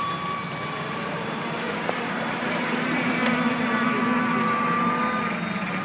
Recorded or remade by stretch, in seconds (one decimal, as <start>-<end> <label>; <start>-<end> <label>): 0.0-0.4 recorded; 0.4-3.1 remade; 3.1-5.8 recorded